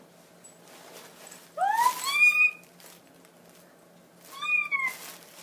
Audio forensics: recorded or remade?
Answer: recorded